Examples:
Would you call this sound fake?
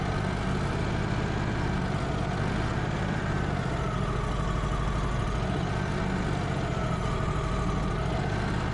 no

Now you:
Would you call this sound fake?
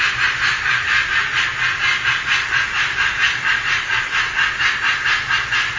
no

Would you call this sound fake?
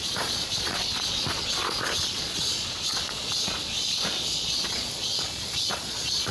yes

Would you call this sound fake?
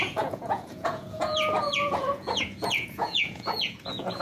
yes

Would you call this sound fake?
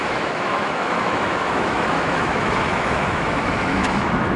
yes